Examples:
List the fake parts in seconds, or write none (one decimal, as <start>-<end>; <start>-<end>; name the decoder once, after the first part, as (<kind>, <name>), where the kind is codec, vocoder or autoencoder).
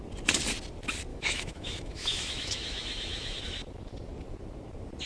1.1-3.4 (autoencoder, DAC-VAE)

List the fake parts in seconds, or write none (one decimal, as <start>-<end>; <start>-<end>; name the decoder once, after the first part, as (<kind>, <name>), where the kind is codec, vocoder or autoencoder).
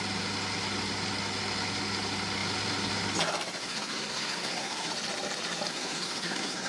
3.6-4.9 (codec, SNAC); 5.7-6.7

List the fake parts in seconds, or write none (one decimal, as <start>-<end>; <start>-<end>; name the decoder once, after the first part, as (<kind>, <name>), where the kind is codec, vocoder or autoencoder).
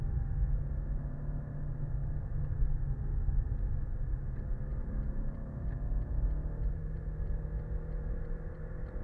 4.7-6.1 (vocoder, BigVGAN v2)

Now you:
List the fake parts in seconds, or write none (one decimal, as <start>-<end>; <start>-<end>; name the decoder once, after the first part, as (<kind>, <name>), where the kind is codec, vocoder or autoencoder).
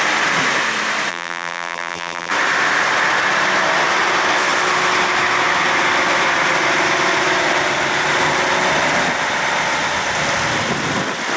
1.1-2.3 (vocoder, BigVGAN v2)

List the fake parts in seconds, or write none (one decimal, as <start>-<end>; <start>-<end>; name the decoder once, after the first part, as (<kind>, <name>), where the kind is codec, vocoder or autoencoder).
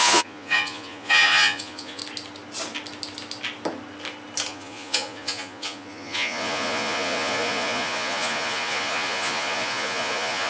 0.0-2.0 (vocoder, Vocos); 4.5-10.5